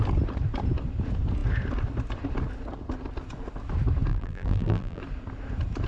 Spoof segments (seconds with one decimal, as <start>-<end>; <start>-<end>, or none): 4.1-5.0